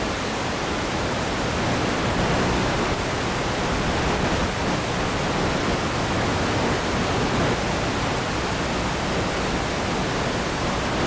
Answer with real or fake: real